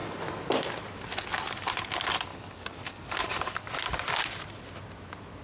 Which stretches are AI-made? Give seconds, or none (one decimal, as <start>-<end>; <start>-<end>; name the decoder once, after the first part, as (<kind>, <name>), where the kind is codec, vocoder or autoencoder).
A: 2.3-3.7 (codec, DAC)